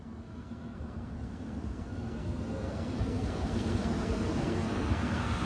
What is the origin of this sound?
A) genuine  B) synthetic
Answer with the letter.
B